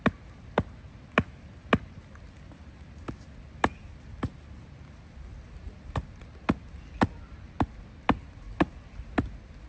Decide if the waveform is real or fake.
real